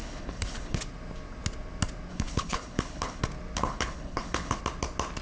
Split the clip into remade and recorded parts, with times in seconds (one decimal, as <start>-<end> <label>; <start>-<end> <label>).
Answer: 0.0-0.8 remade; 0.8-2.1 recorded; 2.1-3.2 remade; 3.2-3.6 recorded; 3.6-4.6 remade; 4.6-5.2 recorded